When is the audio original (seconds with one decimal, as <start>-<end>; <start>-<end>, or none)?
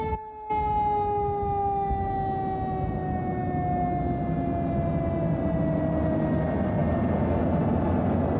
0.0-8.4